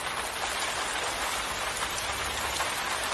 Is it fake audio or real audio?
real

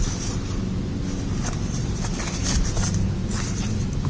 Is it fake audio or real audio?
real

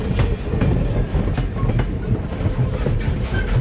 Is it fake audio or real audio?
real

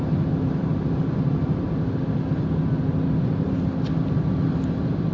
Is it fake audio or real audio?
real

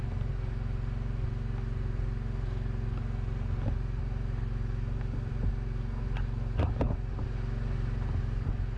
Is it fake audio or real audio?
real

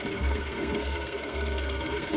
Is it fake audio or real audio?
fake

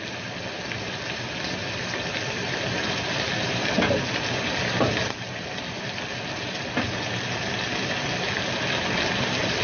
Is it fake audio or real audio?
real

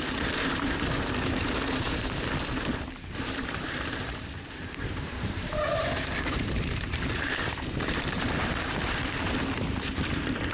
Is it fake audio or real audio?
fake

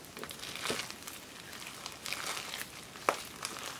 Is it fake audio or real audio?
real